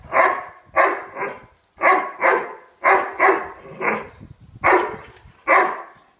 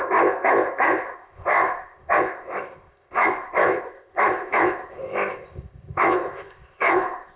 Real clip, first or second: first